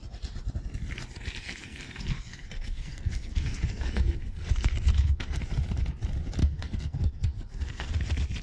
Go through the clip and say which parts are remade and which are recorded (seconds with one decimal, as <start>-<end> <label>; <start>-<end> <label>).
0.0-1.4 recorded; 1.4-5.4 remade; 5.4-6.4 recorded; 6.4-7.9 remade; 7.9-8.4 recorded